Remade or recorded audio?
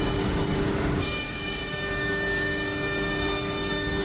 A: remade